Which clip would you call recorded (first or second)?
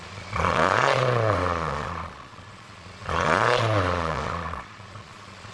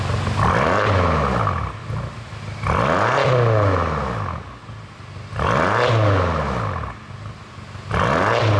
second